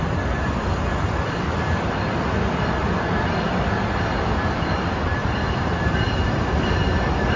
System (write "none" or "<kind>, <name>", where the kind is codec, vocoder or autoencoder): vocoder, BigVGAN v2